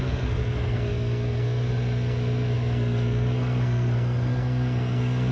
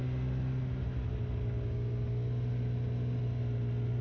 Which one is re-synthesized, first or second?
first